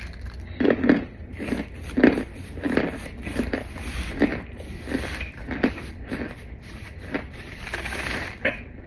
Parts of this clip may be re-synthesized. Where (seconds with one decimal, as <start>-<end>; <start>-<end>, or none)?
2.3-2.8; 4.3-8.3